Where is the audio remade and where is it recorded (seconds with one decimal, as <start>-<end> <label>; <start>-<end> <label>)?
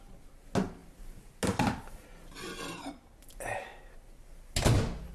0.0-5.1 recorded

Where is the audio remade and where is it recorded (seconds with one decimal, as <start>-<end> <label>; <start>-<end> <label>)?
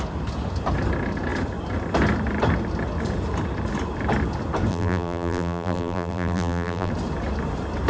0.0-4.7 recorded; 4.7-6.9 remade; 6.9-7.9 recorded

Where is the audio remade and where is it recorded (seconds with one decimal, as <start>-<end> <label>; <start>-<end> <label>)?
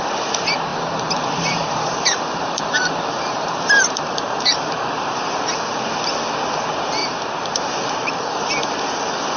0.0-0.7 recorded; 0.7-5.3 remade; 5.3-7.0 recorded; 7.0-8.4 remade; 8.4-9.4 recorded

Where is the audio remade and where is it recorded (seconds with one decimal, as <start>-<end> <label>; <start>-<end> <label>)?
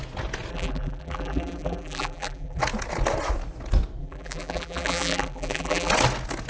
0.0-0.5 recorded; 0.5-2.6 remade; 2.6-4.0 recorded; 4.0-5.9 remade; 5.9-6.5 recorded